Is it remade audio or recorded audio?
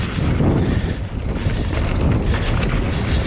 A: recorded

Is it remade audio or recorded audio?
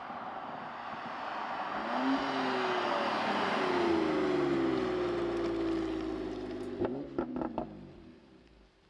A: recorded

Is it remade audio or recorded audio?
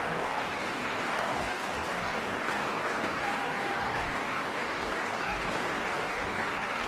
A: remade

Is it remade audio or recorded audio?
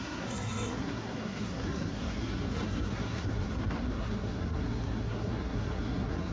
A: remade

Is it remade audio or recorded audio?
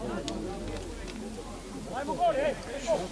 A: recorded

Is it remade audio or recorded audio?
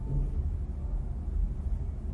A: recorded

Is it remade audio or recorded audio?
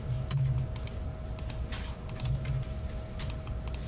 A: recorded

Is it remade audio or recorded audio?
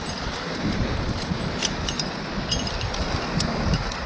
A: recorded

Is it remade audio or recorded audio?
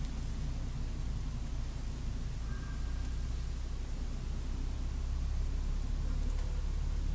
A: recorded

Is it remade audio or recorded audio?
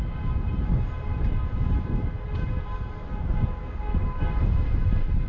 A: recorded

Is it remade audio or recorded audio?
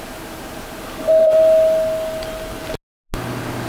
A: recorded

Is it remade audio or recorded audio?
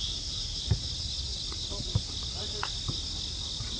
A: recorded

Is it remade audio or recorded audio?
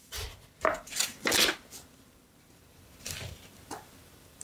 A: remade